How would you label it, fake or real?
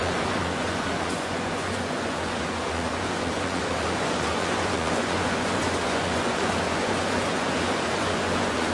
fake